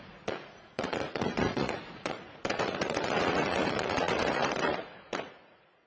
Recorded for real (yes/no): no